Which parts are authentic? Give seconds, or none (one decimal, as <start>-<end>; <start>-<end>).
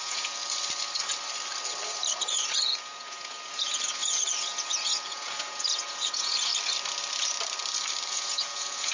0.4-2.2; 6.5-8.1